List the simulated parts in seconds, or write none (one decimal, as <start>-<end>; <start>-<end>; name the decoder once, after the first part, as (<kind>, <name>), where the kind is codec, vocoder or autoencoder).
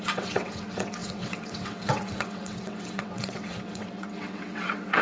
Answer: 0.0-5.0 (vocoder, WaveNeXt)